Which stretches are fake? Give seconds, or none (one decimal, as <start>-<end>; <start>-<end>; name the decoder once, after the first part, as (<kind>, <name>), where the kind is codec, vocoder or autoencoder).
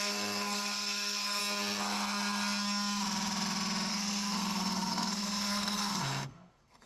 0.0-1.4 (codec, SNAC); 3.9-6.9